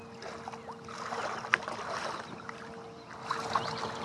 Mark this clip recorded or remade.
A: recorded